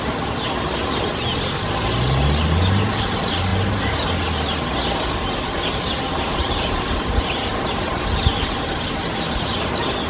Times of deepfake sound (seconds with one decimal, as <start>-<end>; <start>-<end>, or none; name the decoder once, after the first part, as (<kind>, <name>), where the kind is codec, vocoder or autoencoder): none